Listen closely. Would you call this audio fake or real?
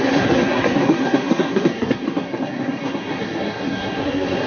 fake